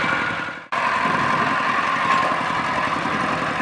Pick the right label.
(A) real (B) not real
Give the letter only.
A